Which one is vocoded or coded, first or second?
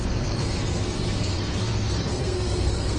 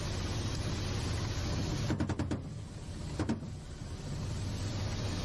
first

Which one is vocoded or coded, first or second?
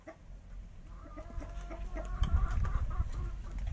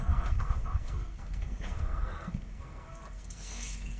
second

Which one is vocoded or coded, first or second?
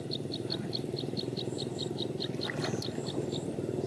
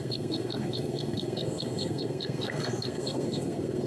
second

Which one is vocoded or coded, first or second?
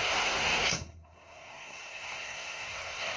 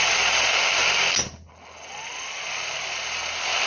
first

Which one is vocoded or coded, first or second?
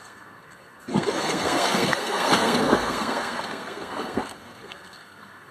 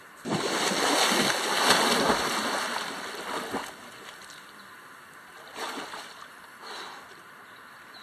first